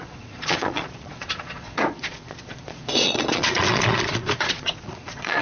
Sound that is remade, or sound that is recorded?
remade